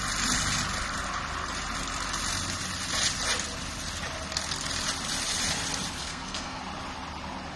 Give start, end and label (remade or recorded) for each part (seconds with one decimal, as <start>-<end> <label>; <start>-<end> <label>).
0.0-6.0 recorded; 6.0-6.6 remade; 6.6-7.6 recorded